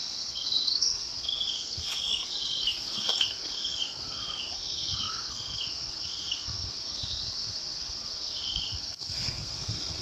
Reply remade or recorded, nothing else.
remade